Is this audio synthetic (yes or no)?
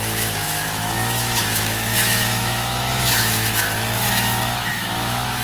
yes